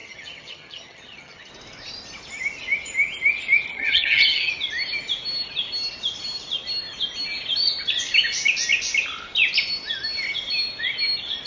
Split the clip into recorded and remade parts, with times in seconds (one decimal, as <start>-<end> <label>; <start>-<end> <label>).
0.0-1.5 remade; 1.5-3.7 recorded; 3.7-4.5 remade; 4.5-11.5 recorded

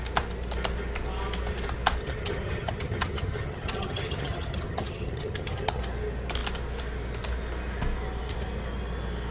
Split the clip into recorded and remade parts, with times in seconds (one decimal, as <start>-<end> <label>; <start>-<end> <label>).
0.0-2.0 recorded; 2.0-5.8 remade; 5.8-9.3 recorded

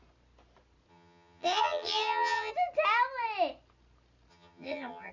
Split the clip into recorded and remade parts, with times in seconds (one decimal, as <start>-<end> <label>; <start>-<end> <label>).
0.0-0.9 recorded; 0.9-2.5 remade; 2.5-4.3 recorded; 4.3-5.1 remade

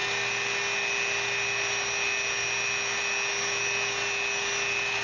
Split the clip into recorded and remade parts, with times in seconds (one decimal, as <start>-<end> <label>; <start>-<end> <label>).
0.0-5.0 recorded

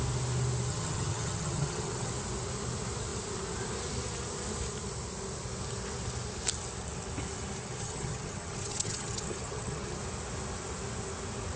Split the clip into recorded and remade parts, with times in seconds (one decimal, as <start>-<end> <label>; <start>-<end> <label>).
0.0-0.7 recorded; 0.7-2.1 remade; 2.1-7.6 recorded; 7.6-10.0 remade; 10.0-11.6 recorded

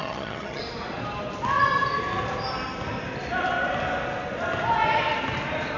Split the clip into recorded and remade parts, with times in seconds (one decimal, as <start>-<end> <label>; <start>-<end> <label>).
0.0-0.6 remade; 0.6-5.8 recorded